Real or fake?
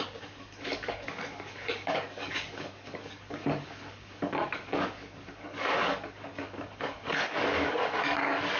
fake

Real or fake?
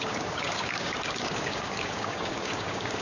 fake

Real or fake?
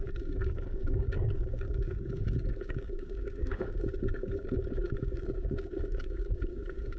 fake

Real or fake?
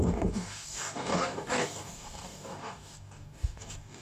fake